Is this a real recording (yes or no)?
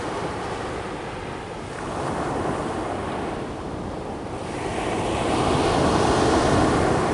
yes